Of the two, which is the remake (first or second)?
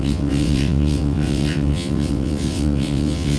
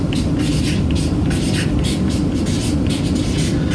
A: first